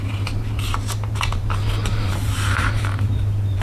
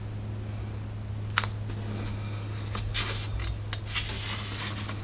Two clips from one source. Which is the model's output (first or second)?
first